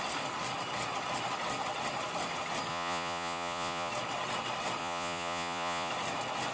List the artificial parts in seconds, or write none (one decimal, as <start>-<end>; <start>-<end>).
2.7-3.9; 4.8-5.9